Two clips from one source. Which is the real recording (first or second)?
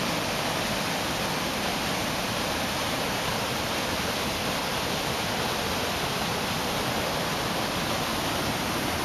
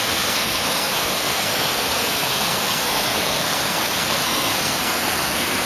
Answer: first